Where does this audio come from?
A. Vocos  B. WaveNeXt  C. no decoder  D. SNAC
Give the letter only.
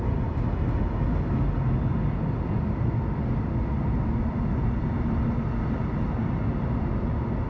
C